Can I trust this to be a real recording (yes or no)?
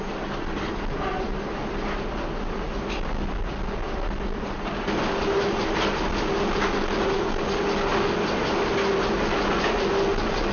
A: yes